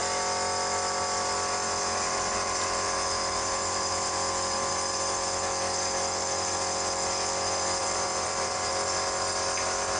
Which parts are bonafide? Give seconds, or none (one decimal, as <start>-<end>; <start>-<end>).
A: 0.0-7.8; 8.7-10.0